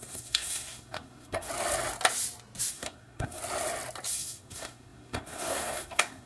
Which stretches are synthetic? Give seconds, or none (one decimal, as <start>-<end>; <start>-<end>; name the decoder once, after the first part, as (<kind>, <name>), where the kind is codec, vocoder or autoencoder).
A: 0.0-1.5 (codec, SNAC); 2.7-3.4; 4.1-6.3